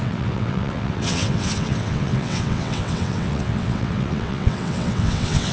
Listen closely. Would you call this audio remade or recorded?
remade